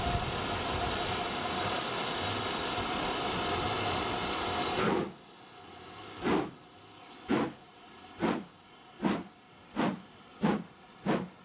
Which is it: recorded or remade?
recorded